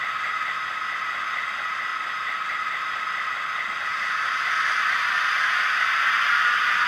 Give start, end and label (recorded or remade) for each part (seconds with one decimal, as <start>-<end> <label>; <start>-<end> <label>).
0.0-1.9 recorded; 1.9-3.3 remade; 3.3-6.9 recorded